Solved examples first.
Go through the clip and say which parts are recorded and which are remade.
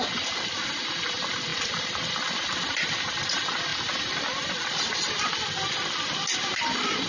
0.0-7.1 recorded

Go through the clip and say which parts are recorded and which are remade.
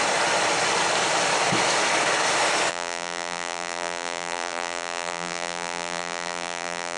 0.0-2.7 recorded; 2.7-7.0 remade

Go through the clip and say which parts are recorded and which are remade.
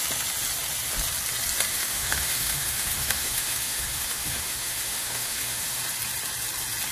0.0-1.7 recorded; 1.7-5.8 remade; 5.8-6.9 recorded